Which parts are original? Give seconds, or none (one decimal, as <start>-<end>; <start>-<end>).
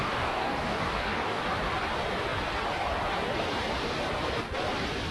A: 1.4-5.1